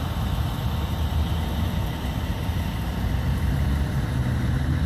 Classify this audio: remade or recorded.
recorded